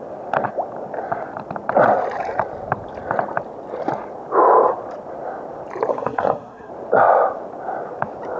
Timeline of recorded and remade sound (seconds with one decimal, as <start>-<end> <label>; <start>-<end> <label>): 0.0-5.9 recorded; 5.9-6.7 remade; 6.7-8.4 recorded

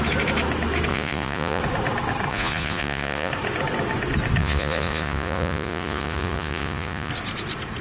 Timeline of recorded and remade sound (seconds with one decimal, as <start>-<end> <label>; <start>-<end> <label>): 0.0-0.9 recorded; 0.9-1.6 remade; 1.6-2.3 recorded; 2.3-3.3 remade; 3.3-4.4 recorded; 4.4-7.1 remade; 7.1-7.8 recorded

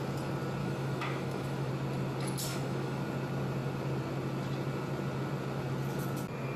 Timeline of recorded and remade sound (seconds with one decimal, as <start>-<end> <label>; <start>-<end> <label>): 0.0-0.6 recorded; 0.6-1.7 remade; 1.7-2.5 recorded; 2.5-3.0 remade; 3.0-6.6 recorded

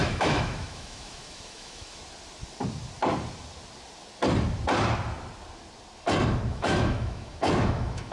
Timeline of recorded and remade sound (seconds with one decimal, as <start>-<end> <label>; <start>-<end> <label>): 0.0-2.0 remade; 2.0-6.5 recorded; 6.5-8.1 remade

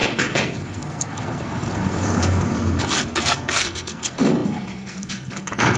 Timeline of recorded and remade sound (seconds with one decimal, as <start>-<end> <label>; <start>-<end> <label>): 0.0-5.8 remade

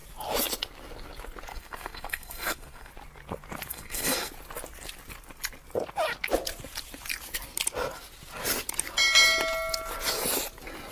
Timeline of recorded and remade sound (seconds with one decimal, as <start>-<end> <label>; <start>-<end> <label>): 0.0-1.5 recorded; 1.5-2.9 remade; 2.9-3.7 recorded; 3.7-4.3 remade; 4.3-10.9 recorded

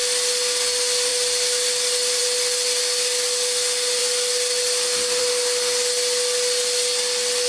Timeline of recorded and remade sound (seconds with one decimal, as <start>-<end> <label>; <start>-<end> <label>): 0.0-7.5 recorded

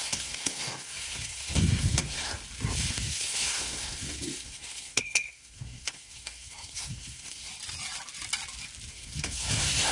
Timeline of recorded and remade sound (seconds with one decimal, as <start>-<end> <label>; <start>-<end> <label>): 0.0-2.3 remade; 2.3-2.9 recorded; 2.9-7.5 remade; 7.5-8.9 recorded; 8.9-9.9 remade